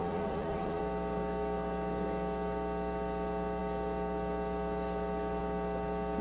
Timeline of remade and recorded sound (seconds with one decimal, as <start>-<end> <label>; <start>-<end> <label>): 0.0-0.8 remade; 0.8-6.2 recorded

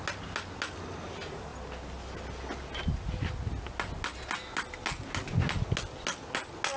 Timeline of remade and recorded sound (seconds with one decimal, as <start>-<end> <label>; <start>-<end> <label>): 0.0-6.8 recorded

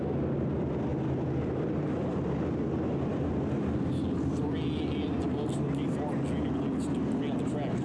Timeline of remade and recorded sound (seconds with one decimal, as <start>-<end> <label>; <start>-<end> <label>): 0.0-7.8 recorded

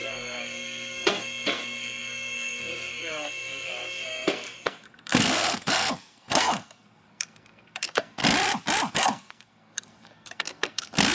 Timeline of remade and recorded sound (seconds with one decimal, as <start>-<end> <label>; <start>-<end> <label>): 0.0-8.2 remade; 8.2-8.9 recorded; 8.9-11.1 remade

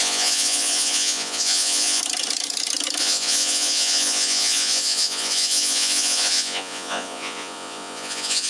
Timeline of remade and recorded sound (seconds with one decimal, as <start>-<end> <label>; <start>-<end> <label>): 0.0-2.0 remade; 2.0-3.0 recorded; 3.0-8.5 remade